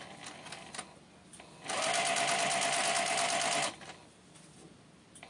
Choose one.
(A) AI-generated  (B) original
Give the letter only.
B